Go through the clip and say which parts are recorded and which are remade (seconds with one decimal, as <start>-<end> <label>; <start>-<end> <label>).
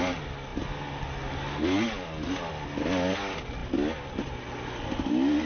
0.0-5.5 recorded